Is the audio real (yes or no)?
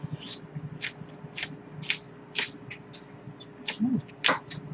yes